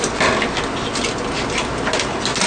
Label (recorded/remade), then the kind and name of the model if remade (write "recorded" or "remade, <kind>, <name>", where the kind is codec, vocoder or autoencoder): recorded